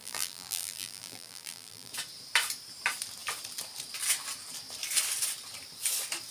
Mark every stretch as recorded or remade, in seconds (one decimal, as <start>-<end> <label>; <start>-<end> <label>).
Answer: 0.0-1.9 remade; 1.9-6.3 recorded

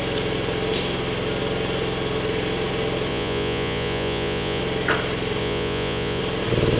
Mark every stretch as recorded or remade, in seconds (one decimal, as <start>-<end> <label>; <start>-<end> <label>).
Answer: 0.0-3.1 recorded; 3.1-4.6 remade; 4.6-5.4 recorded; 5.4-6.2 remade; 6.2-6.8 recorded